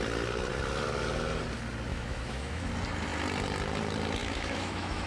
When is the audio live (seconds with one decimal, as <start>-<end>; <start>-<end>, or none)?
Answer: 0.0-1.9; 2.7-4.2